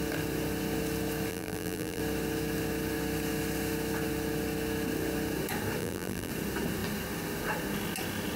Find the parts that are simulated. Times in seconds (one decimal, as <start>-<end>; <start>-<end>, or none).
1.3-2.0; 5.8-6.3